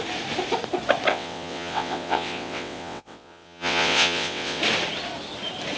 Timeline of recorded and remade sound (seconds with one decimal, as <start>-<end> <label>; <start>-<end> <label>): 0.0-1.1 recorded; 1.1-4.6 remade; 4.6-5.8 recorded